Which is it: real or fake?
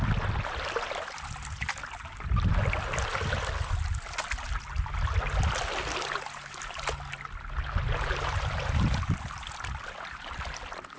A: real